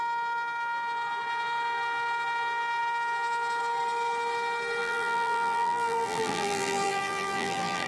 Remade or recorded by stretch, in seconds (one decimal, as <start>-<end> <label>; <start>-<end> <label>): 0.0-4.8 recorded; 4.8-7.9 remade